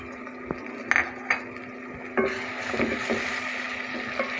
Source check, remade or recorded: recorded